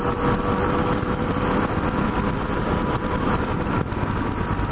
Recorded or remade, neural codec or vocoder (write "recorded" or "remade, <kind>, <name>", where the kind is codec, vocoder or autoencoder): recorded